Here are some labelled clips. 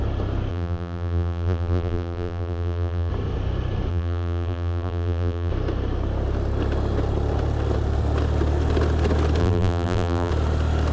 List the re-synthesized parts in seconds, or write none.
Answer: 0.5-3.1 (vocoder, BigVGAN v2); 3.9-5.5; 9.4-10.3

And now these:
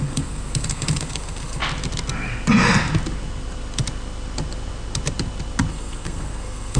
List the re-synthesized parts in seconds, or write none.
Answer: 0.0-1.6 (codec, SNAC); 5.7-6.8

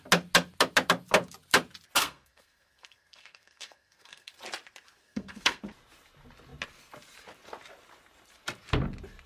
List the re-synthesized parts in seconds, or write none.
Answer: 2.0-4.3 (codec, SNAC); 5.0-5.6

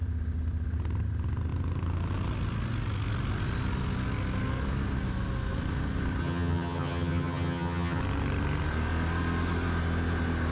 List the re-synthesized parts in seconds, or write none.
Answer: 6.2-8.0 (vocoder, HiFi-GAN)

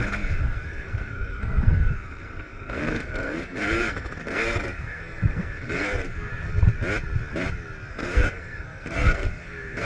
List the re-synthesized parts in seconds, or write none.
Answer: 0.0-6.3 (codec, SNAC); 7.9-9.8